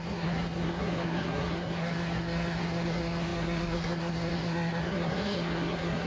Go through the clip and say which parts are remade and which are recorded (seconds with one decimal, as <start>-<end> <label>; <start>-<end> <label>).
0.0-6.1 remade